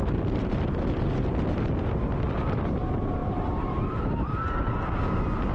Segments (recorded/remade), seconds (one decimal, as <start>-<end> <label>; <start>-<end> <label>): 0.0-0.6 remade; 0.6-3.2 recorded; 3.2-4.1 remade; 4.1-5.5 recorded